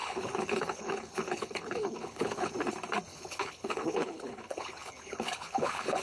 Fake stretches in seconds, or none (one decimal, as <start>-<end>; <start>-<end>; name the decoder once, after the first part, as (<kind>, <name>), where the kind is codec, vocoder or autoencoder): 0.0-2.5 (codec, HILCodec); 3.1-6.0